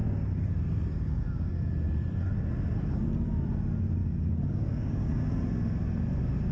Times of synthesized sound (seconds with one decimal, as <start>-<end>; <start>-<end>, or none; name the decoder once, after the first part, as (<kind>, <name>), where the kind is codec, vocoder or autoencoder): 0.0-1.5 (codec, DAC); 4.0-5.3